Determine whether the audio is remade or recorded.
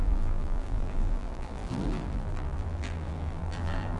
remade